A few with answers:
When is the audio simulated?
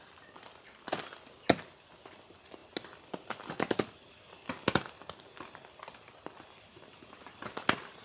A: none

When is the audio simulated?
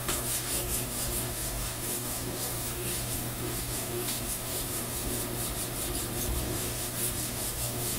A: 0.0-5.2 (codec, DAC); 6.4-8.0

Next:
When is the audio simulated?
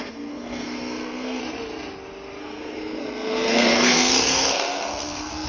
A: 0.0-1.4 (codec, SNAC); 2.4-5.5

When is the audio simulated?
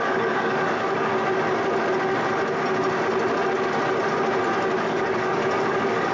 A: 0.0-1.1 (codec, DAC); 4.8-6.1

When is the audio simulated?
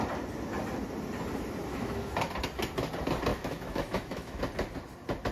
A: 1.7-2.3 (autoencoder, DAC-VAE); 3.3-4.4